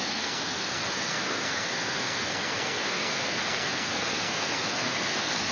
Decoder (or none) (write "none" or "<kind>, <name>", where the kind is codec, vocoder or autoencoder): codec, SNAC